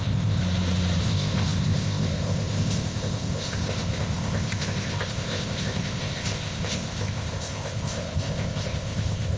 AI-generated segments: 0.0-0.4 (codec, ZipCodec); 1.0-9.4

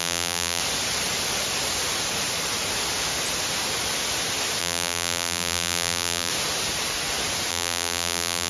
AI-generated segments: 0.0-0.6 (vocoder, BigVGAN v2); 4.6-6.3; 7.5-8.5

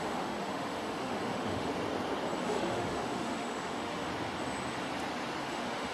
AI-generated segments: 0.0-1.7 (autoencoder, DAC-VAE); 2.4-4.1; 5.4-5.9

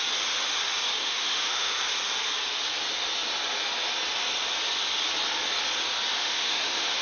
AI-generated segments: 1.0-1.8 (autoencoder, DAC-VAE); 6.2-7.0

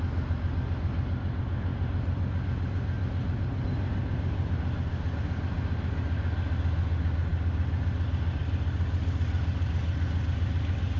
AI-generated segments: none

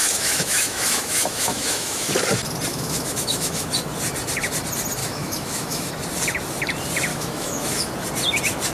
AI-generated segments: 0.0-2.1 (autoencoder, DAC-VAE); 2.7-3.7; 5.0-5.9; 7.1-7.9

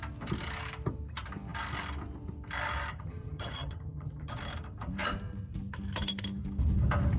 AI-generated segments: 2.9-4.4 (vocoder, HiFi-GAN)